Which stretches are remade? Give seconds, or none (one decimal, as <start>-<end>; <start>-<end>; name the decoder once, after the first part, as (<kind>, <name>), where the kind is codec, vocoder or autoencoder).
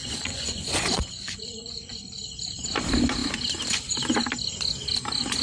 0.0-2.0 (vocoder, Vocos)